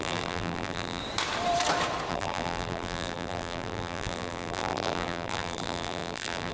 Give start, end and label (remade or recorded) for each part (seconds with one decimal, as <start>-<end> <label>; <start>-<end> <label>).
0.0-1.0 remade; 1.0-2.1 recorded; 2.1-6.5 remade